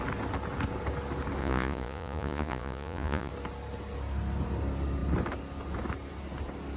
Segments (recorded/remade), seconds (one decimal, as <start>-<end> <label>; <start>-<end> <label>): 0.0-1.4 recorded; 1.4-3.3 remade; 3.3-6.8 recorded